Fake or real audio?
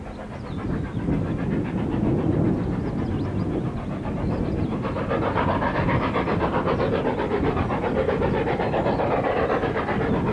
real